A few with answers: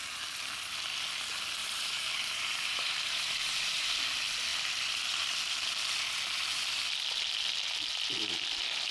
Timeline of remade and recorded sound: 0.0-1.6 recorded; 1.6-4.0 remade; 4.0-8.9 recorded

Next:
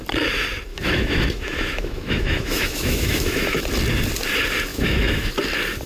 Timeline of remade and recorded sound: 0.0-0.7 recorded; 0.7-3.6 remade; 3.6-4.7 recorded; 4.7-5.3 remade; 5.3-5.9 recorded

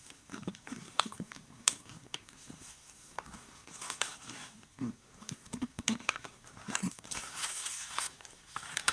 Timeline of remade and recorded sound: 0.0-8.9 remade